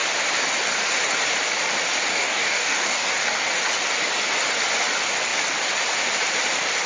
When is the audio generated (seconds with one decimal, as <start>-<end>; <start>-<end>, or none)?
2.1-3.5